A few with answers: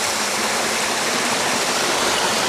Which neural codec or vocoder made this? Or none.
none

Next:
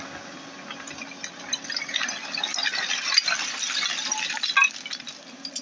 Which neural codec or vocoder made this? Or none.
none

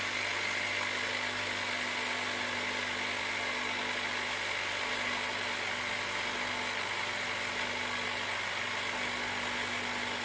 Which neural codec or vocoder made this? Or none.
none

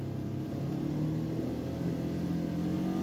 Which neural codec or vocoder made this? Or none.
none